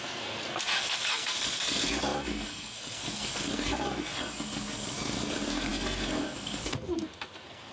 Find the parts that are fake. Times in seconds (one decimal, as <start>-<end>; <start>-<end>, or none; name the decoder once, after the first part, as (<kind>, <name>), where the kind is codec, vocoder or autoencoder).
0.0-7.7 (codec, SNAC)